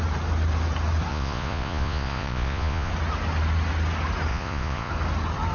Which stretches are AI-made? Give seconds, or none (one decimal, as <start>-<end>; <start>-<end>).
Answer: 1.1-2.9; 4.3-4.9